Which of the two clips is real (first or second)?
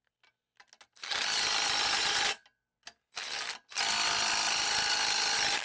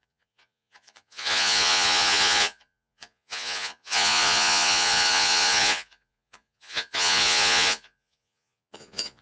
first